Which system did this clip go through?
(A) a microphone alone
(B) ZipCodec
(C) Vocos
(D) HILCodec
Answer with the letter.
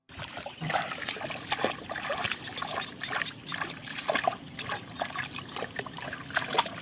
A